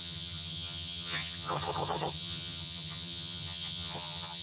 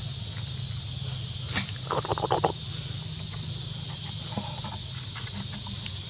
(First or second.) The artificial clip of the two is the first